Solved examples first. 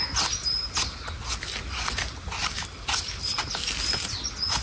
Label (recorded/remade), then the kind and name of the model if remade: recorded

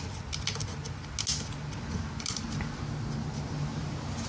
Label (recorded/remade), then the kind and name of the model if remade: recorded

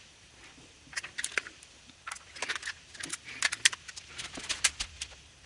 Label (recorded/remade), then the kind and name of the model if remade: recorded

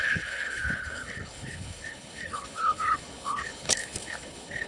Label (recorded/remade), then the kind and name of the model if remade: remade, codec, HILCodec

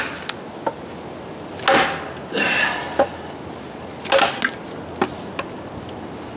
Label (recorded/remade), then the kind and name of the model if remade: recorded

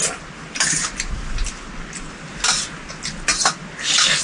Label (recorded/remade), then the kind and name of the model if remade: recorded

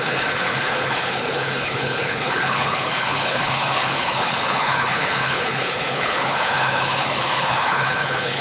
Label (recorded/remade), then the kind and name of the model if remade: remade, codec, HILCodec